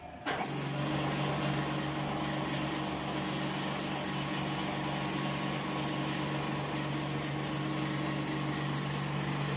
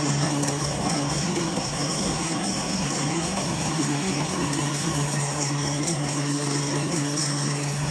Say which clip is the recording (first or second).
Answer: first